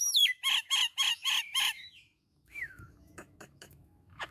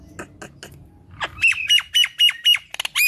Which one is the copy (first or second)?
first